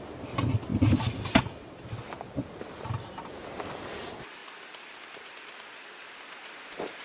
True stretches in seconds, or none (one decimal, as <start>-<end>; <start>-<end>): 0.0-0.7; 1.4-7.0